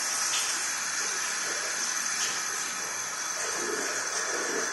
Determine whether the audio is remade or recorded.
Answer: recorded